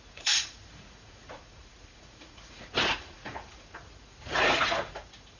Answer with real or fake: fake